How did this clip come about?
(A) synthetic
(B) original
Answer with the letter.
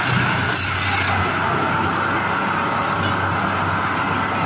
B